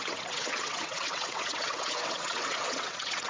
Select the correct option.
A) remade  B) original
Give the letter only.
A